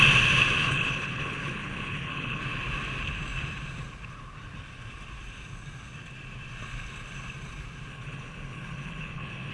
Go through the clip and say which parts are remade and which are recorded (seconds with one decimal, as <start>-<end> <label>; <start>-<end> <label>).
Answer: 0.0-0.6 recorded; 0.6-2.4 remade; 2.4-7.9 recorded; 7.9-9.5 remade